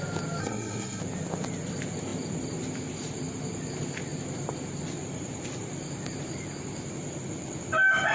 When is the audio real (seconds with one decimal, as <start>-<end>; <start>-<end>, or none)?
0.0-0.4; 1.0-8.1